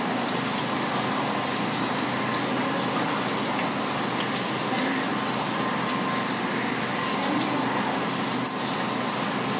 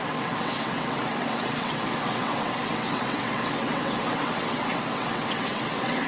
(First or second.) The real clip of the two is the first